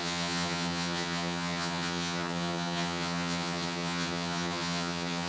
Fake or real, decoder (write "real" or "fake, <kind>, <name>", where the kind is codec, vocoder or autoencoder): fake, vocoder, HiFi-GAN